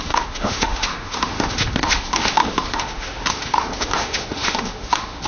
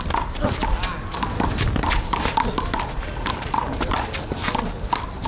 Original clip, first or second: second